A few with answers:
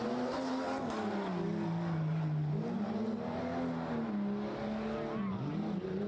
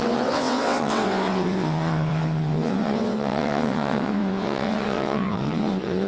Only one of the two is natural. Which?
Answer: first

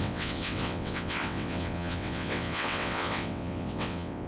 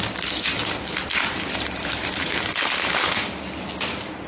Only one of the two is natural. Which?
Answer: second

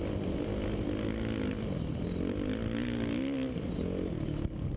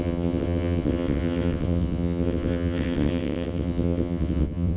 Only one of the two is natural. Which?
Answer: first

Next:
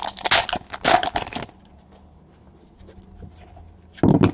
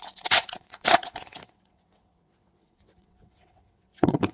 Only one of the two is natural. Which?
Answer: first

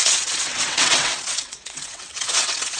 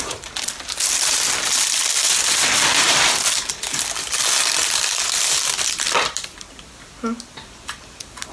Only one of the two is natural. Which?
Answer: second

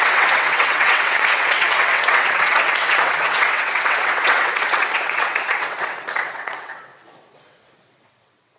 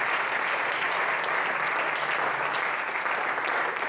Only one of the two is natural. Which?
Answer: second